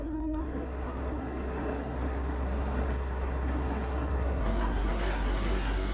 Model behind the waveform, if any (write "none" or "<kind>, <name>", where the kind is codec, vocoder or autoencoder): codec, SNAC